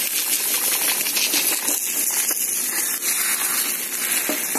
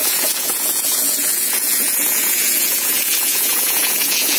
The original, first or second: first